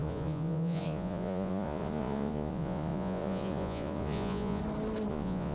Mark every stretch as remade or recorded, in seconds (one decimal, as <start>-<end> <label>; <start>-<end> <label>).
0.0-4.6 remade; 4.6-5.1 recorded; 5.1-5.5 remade